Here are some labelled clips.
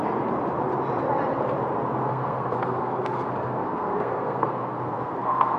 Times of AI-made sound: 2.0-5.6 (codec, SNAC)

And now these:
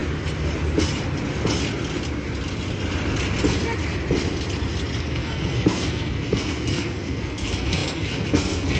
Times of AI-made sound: 5.0-8.8 (codec, SNAC)

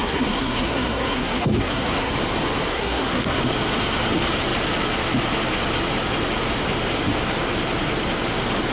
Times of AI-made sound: 0.0-2.1 (codec, SNAC); 2.7-3.4

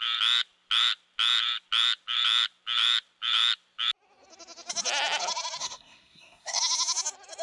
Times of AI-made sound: 5.6-6.6 (codec, SNAC)